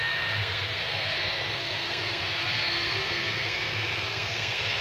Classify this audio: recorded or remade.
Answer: remade